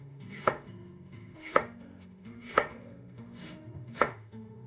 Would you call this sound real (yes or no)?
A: no